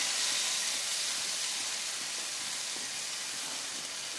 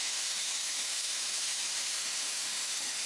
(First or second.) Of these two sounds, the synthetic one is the second